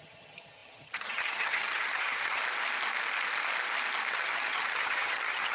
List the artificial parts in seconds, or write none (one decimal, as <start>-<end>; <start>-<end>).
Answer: 0.0-2.4; 4.1-5.5